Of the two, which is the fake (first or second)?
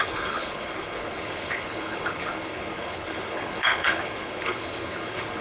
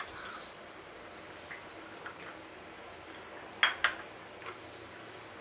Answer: first